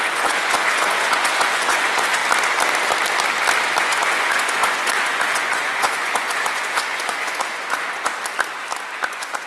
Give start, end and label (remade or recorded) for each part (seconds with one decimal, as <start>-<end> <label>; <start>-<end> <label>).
0.0-2.2 remade; 2.2-3.8 recorded; 3.8-8.1 remade; 8.1-9.1 recorded; 9.1-9.5 remade